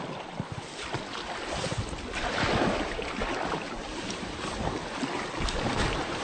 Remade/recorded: remade